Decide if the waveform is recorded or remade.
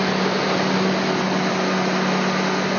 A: recorded